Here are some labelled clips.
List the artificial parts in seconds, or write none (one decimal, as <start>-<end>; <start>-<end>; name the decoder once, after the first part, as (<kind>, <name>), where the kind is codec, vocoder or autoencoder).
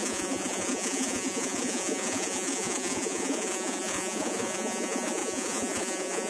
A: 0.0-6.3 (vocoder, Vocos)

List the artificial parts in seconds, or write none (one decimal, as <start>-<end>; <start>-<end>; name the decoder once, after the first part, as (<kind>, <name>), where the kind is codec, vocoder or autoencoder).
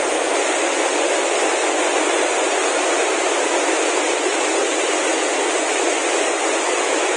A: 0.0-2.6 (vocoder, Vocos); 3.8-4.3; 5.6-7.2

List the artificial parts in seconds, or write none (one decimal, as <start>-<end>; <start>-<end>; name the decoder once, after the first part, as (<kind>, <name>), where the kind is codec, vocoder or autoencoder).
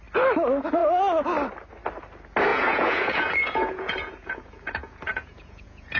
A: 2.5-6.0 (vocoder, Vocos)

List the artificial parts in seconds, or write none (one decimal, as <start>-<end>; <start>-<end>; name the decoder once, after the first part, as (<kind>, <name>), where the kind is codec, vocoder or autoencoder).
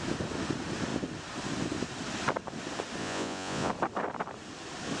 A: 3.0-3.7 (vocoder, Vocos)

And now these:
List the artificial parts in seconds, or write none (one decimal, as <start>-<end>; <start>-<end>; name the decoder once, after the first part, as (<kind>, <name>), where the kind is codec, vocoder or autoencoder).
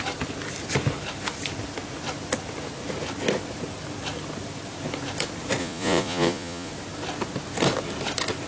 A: 5.6-6.7 (vocoder, Vocos)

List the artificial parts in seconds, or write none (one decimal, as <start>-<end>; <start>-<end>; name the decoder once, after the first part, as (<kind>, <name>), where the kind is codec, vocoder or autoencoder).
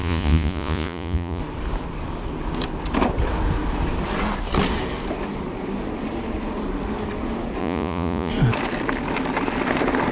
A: 0.0-1.4 (vocoder, Vocos); 7.6-8.3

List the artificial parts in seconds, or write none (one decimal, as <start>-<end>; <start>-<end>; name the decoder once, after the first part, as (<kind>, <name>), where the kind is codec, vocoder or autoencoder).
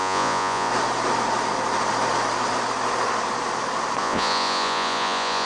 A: 0.0-0.7 (vocoder, Vocos); 4.0-5.5